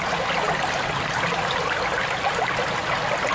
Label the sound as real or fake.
real